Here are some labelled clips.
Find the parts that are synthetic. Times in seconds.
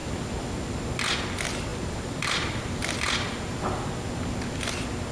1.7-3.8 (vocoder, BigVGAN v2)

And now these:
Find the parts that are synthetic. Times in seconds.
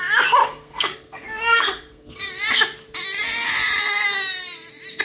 0.4-2.3 (codec, SNAC)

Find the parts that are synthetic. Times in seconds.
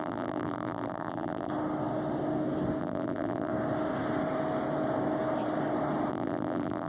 0.0-1.5 (vocoder, BigVGAN v2); 2.8-3.5; 6.1-6.9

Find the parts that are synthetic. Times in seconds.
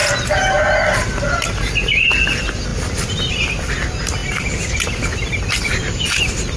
none